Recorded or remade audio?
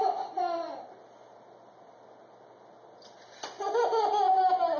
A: recorded